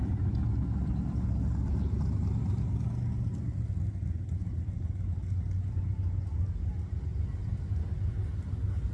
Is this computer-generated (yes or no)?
no